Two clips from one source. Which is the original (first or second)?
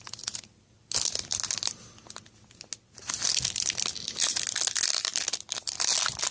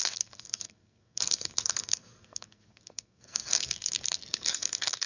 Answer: first